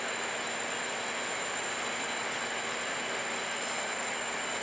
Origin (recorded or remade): recorded